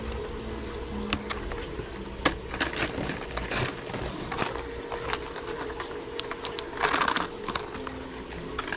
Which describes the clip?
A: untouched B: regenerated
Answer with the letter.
A